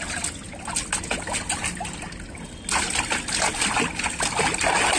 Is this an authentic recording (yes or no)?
yes